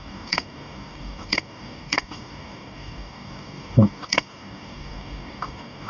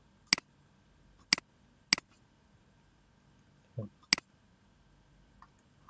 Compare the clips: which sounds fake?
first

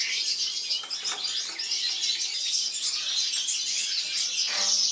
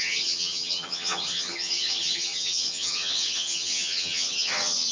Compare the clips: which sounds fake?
second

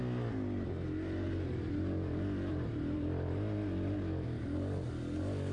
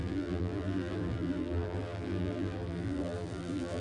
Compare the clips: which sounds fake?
second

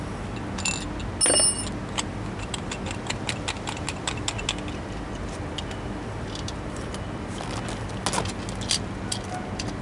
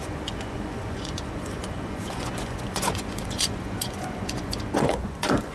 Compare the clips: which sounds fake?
second